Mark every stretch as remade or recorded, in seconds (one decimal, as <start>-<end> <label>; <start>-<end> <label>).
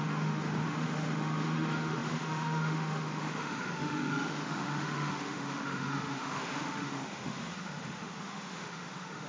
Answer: 0.0-9.3 remade